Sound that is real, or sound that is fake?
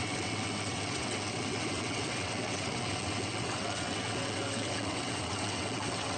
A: fake